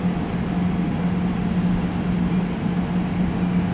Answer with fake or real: real